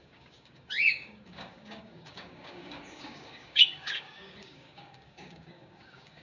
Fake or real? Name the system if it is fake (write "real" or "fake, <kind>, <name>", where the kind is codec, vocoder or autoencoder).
fake, codec, DAC